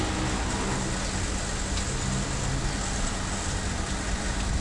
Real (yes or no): yes